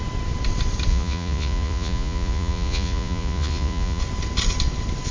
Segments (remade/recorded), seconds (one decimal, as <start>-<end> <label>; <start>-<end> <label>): 0.0-0.9 recorded; 0.9-4.0 remade; 4.0-5.1 recorded